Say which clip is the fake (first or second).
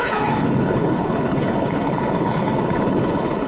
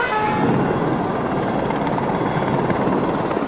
first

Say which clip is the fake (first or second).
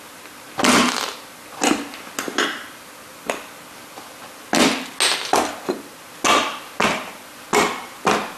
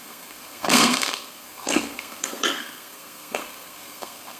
second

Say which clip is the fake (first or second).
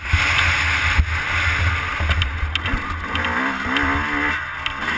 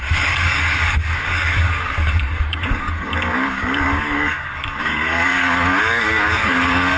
second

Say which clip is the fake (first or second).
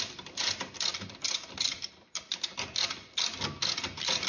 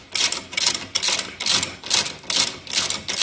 first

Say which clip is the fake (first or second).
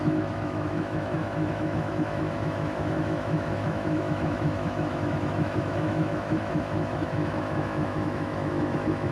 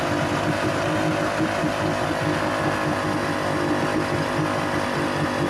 first